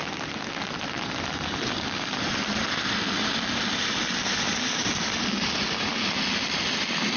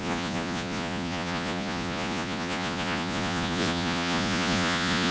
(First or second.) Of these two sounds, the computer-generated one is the second